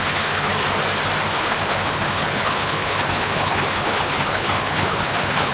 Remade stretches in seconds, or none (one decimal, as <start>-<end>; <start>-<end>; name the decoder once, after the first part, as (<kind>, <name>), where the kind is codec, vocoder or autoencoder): 0.0-0.5 (codec, HILCodec); 1.3-5.5